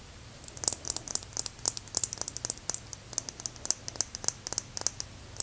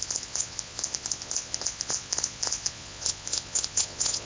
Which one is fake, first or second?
second